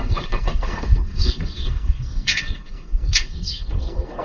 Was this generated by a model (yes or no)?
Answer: yes